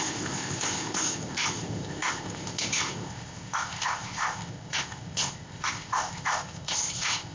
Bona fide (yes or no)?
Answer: no